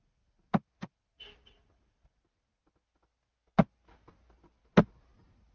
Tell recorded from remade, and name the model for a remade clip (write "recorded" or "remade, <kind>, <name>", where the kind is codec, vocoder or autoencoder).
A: recorded